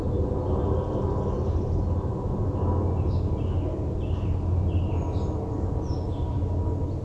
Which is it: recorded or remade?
recorded